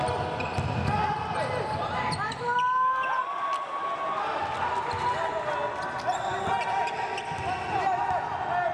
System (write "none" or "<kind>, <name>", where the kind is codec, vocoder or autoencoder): none